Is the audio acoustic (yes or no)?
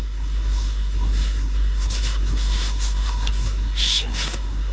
no